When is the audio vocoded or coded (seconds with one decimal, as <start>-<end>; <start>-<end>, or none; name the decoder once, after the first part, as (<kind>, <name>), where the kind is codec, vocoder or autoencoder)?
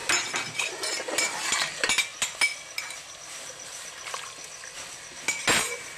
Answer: none